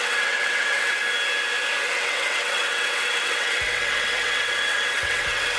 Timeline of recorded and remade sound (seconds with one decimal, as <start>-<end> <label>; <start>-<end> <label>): 0.0-1.0 remade; 1.0-1.9 recorded; 1.9-5.6 remade